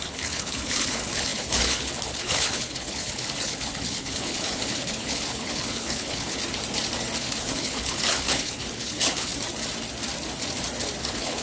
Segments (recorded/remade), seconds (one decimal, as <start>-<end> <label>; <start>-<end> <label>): 0.0-6.4 remade; 6.4-7.2 recorded; 7.2-9.3 remade; 9.3-11.0 recorded; 11.0-11.4 remade